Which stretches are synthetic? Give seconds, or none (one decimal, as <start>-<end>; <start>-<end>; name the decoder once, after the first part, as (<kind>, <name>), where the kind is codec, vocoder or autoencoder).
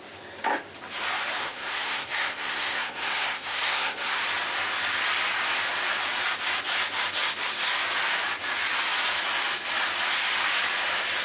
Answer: 1.4-4.2 (codec, SNAC)